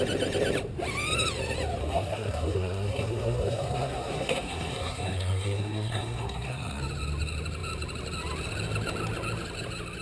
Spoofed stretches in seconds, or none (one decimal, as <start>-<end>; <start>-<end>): 1.8-6.8